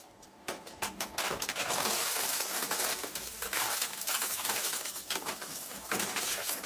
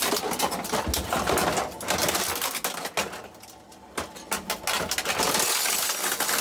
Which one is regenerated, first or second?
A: first